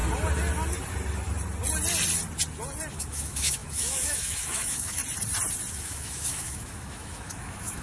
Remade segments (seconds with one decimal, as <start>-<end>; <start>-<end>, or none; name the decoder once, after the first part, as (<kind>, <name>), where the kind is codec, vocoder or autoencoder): 2.9-5.0 (autoencoder, DAC-VAE); 5.7-7.8